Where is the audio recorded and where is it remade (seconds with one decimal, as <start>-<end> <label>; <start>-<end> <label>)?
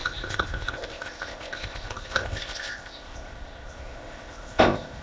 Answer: 0.0-5.0 remade